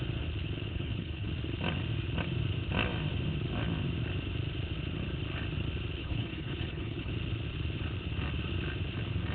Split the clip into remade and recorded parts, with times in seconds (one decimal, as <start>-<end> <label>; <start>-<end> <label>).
0.0-0.7 recorded; 0.7-1.3 remade; 1.3-6.0 recorded; 6.0-7.1 remade; 7.1-9.3 recorded